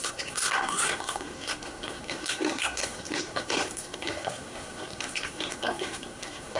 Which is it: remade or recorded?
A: remade